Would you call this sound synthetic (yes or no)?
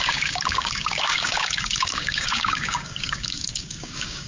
yes